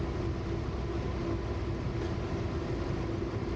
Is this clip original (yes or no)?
yes